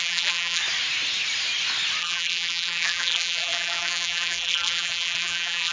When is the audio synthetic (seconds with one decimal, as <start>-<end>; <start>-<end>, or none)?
0.0-0.6; 2.0-5.7